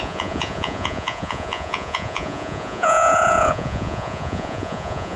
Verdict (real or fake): fake